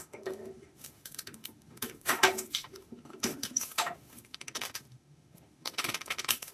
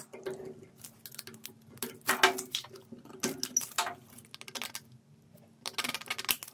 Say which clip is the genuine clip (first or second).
second